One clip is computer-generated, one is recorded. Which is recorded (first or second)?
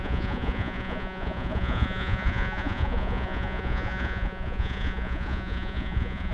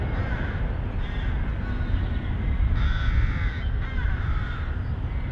second